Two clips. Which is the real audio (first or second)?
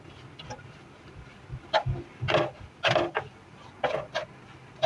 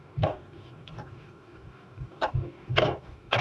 first